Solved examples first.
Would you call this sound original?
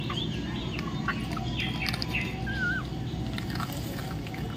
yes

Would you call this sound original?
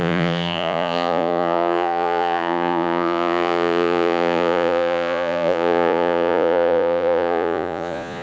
no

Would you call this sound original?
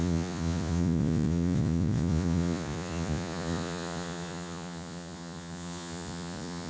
no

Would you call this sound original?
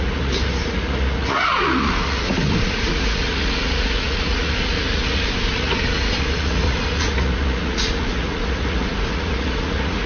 no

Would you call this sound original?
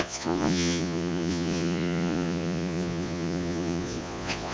no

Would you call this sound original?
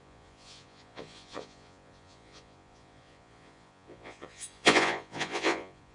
no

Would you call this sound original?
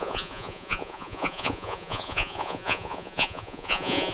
no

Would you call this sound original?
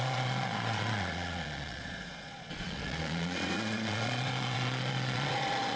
no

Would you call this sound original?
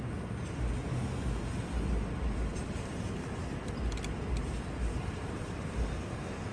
yes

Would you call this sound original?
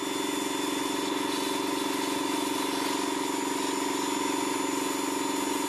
yes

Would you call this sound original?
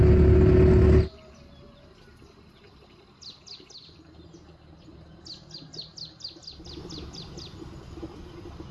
yes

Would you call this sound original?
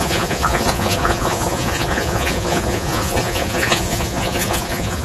no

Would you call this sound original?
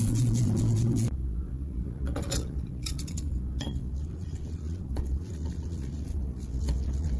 no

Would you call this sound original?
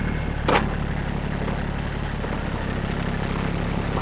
yes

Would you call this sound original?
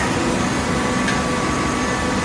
yes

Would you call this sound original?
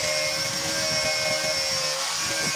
yes